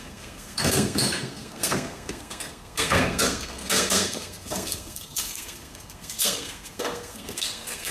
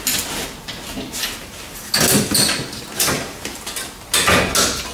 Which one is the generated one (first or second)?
first